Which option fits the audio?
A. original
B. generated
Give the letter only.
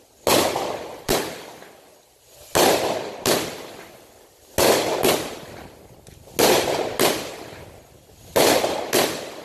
A